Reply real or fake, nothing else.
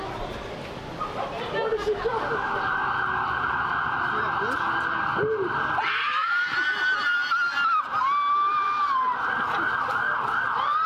real